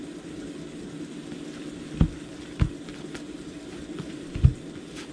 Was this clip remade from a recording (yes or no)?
no